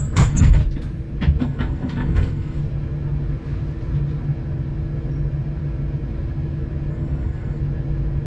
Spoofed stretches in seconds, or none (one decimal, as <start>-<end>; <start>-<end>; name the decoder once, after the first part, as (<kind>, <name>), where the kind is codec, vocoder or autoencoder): 0.0-0.6 (codec, SNAC); 1.4-2.6; 6.9-7.6